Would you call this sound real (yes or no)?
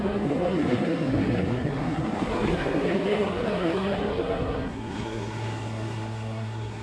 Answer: no